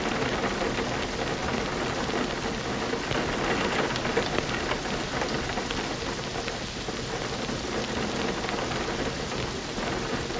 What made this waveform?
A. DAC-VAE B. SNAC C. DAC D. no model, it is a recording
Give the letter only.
D